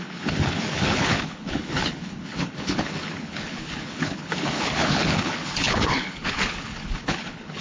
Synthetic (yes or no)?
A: yes